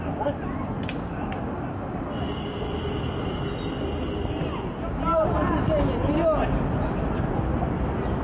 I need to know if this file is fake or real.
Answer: real